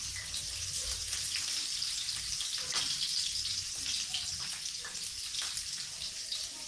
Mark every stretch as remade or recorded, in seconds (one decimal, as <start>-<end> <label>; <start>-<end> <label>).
0.0-6.7 remade